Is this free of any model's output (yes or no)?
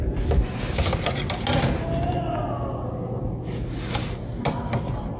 yes